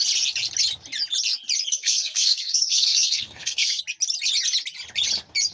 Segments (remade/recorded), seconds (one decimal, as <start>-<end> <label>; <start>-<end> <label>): 0.0-1.8 recorded; 1.8-3.8 remade; 3.8-5.5 recorded

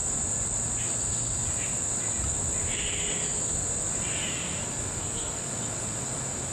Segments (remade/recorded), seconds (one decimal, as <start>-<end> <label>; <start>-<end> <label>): 0.0-5.0 recorded; 5.0-5.5 remade; 5.5-6.5 recorded

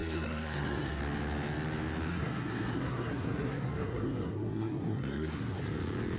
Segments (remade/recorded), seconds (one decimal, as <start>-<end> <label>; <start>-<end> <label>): 0.0-1.0 remade; 1.0-2.1 recorded; 2.1-5.6 remade; 5.6-6.2 recorded

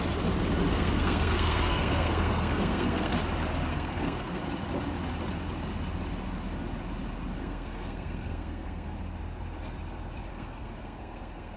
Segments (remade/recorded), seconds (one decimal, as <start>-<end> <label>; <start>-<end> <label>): 0.0-0.7 recorded; 0.7-3.1 remade; 3.1-3.7 recorded; 3.7-4.4 remade; 4.4-7.4 recorded; 7.4-9.0 remade; 9.0-10.3 recorded; 10.3-11.6 remade

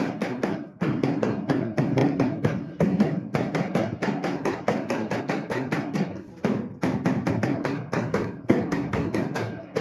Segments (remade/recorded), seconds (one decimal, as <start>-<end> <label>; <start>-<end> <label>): 0.0-6.3 remade; 6.3-7.3 recorded; 7.3-9.8 remade

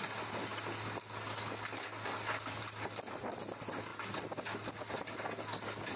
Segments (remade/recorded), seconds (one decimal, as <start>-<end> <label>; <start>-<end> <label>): 0.0-6.0 recorded

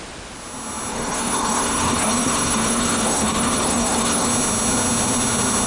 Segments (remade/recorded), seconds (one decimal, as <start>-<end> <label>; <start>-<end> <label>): 0.0-0.9 recorded; 0.9-4.3 remade; 4.3-5.7 recorded